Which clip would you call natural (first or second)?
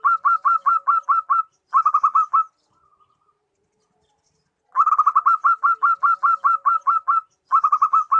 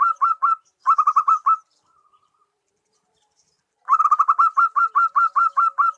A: first